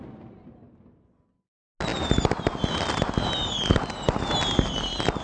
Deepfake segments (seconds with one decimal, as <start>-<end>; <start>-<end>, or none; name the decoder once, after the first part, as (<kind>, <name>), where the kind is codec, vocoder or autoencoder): none